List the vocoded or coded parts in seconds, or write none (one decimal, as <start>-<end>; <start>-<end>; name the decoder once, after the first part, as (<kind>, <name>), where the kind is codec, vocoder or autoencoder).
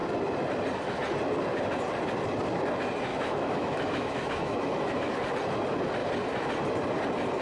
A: 3.1-5.1 (autoencoder, DAC-VAE)